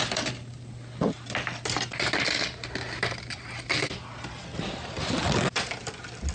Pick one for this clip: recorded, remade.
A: recorded